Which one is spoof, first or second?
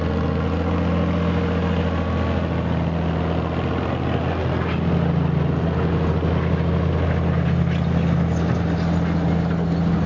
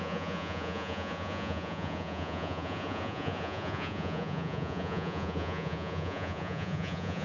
second